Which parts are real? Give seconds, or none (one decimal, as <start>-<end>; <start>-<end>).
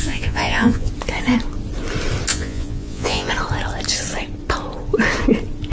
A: 0.9-2.3; 3.3-5.7